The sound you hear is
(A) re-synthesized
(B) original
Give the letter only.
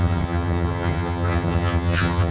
A